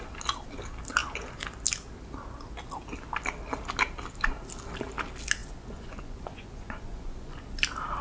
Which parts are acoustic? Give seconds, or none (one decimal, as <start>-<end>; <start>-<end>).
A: 0.0-5.4; 7.5-8.0